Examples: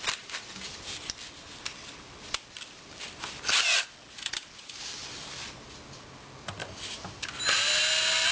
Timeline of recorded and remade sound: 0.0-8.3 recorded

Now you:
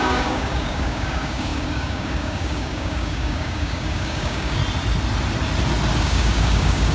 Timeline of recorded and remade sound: 0.0-4.6 remade; 4.6-6.0 recorded; 6.0-6.9 remade

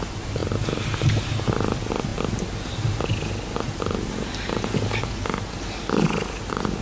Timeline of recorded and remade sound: 0.0-6.8 recorded

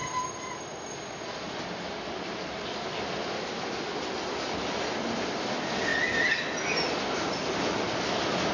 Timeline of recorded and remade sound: 0.0-8.5 recorded

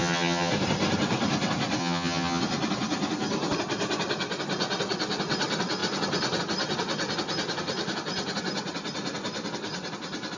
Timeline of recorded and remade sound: 0.0-0.5 remade; 0.5-1.8 recorded; 1.8-2.4 remade; 2.4-10.4 recorded